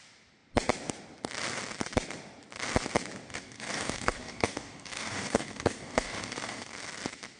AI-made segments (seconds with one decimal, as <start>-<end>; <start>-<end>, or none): 3.3-6.7